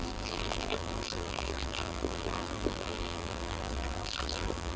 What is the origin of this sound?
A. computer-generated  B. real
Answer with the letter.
A